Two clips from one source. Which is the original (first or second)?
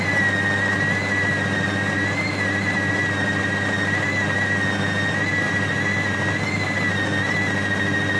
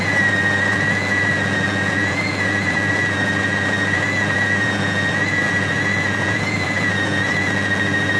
first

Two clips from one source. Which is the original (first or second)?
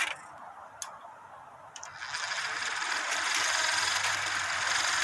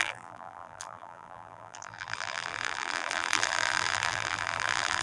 first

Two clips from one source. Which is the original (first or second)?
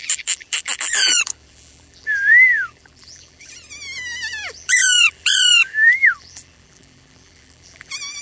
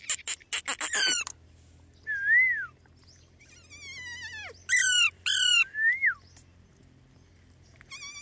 second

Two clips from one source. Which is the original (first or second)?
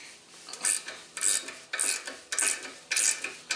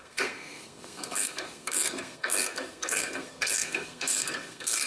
first